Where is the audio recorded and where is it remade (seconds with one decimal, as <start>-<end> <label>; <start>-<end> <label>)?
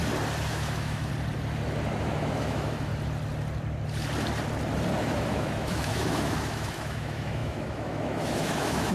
0.0-0.5 recorded; 0.5-1.1 remade; 1.1-2.0 recorded; 2.0-2.9 remade; 2.9-5.0 recorded; 5.0-8.9 remade